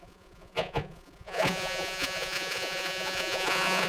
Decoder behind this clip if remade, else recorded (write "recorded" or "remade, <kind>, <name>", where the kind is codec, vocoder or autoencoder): remade, vocoder, Vocos